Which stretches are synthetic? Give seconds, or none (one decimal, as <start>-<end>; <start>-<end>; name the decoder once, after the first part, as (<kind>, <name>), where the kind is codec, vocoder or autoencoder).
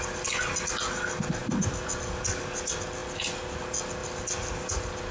1.4-1.9 (vocoder, BigVGAN v2); 3.0-3.6; 4.0-5.1